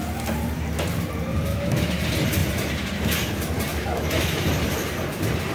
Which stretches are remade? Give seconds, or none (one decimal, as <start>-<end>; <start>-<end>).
1.5-2.0; 3.7-4.5

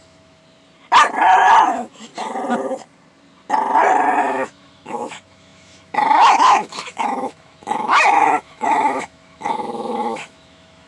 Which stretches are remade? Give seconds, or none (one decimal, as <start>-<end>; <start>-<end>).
0.0-0.4; 1.7-2.1; 4.2-10.9

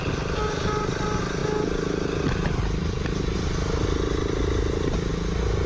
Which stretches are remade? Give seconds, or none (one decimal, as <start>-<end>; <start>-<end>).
none